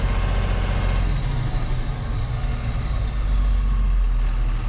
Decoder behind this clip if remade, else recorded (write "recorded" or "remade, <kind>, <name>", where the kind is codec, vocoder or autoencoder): recorded